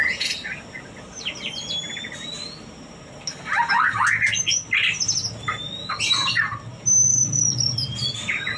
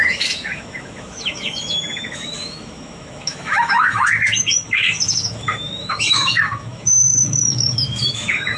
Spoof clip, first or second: second